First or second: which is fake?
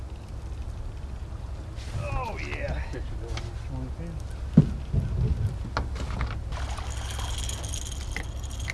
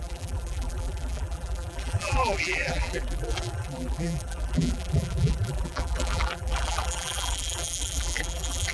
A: second